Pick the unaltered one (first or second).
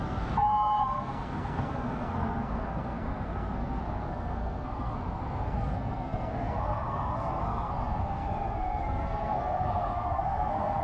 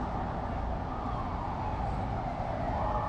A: second